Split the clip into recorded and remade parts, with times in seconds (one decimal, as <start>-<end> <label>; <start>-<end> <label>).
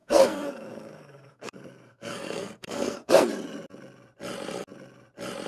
0.0-3.3 remade; 3.3-5.5 recorded